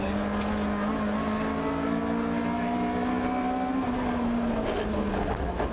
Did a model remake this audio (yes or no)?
no